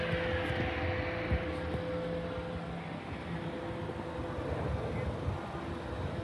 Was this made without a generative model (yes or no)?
yes